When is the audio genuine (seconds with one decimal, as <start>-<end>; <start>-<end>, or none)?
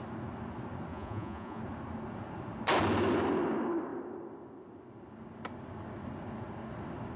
0.0-0.9; 1.6-7.2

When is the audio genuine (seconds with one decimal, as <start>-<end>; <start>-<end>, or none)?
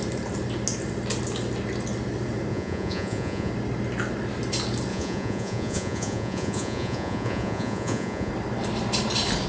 0.0-2.5; 3.5-4.9; 8.3-9.5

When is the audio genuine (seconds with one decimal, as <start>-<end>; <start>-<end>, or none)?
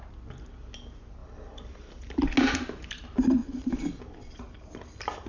0.0-1.2; 2.2-3.4; 4.4-5.3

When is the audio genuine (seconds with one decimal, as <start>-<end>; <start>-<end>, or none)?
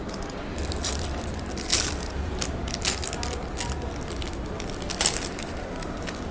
0.0-6.3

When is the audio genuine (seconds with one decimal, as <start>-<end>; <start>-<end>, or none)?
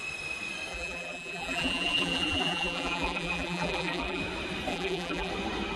0.0-0.7; 4.2-4.7; 5.3-5.8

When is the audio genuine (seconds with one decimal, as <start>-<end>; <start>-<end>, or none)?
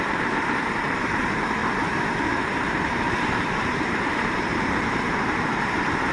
1.6-2.2